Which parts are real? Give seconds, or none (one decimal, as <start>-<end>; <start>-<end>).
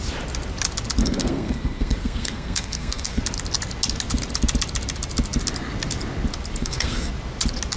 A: 0.0-1.0; 3.2-6.6; 7.1-7.8